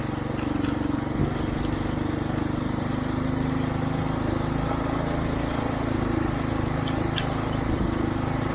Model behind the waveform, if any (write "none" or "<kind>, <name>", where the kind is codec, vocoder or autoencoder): none